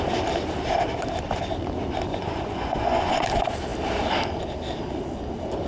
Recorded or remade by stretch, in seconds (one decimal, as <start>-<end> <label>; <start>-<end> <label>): 0.0-2.1 recorded; 2.1-3.1 remade; 3.1-5.7 recorded

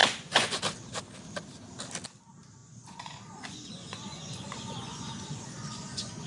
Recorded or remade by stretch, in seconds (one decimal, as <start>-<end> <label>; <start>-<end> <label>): 0.0-0.6 remade; 0.6-2.6 recorded; 2.6-6.3 remade

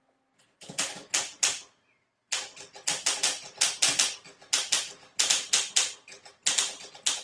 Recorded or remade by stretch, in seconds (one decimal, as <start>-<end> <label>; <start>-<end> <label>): 0.0-7.2 recorded

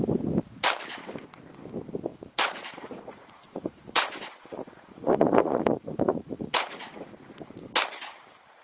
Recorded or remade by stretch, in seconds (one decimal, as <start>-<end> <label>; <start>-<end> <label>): 0.0-2.1 recorded; 2.1-7.1 remade; 7.1-8.6 recorded